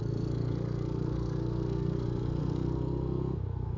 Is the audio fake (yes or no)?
yes